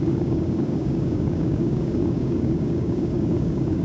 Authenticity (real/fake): fake